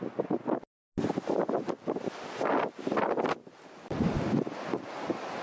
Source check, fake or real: real